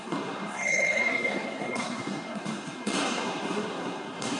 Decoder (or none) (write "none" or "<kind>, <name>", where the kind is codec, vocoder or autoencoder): codec, SNAC